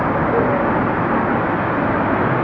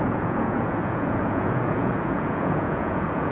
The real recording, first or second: first